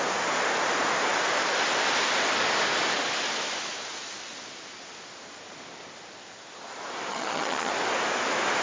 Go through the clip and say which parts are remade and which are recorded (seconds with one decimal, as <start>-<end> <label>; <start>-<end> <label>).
0.0-7.1 recorded; 7.1-7.7 remade; 7.7-8.6 recorded